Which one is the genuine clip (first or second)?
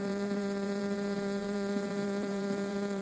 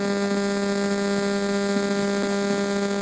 second